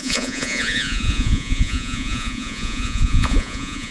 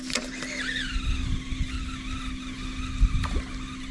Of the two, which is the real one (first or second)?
second